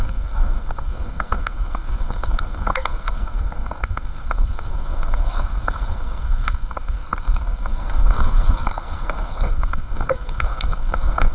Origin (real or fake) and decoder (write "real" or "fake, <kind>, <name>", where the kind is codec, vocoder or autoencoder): fake, codec, SNAC